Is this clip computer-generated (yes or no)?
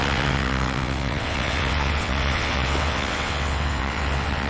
yes